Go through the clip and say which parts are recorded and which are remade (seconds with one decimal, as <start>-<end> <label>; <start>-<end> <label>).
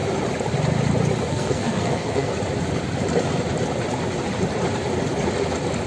0.0-1.3 recorded; 1.3-2.3 remade; 2.3-5.9 recorded